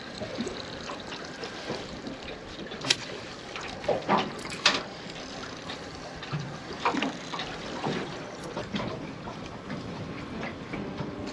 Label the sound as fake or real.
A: fake